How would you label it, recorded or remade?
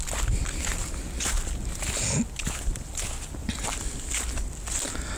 recorded